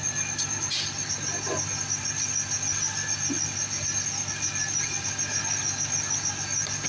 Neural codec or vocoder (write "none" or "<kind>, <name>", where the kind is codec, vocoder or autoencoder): none